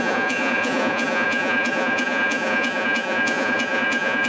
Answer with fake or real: fake